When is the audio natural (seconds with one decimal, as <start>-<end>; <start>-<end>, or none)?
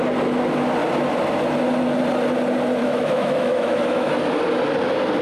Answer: 0.0-2.8; 4.1-5.2